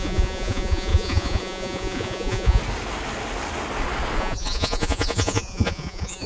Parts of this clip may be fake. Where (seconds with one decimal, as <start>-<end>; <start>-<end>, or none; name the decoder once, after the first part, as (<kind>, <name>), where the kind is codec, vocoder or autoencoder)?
0.0-2.6 (vocoder, Vocos); 4.2-6.3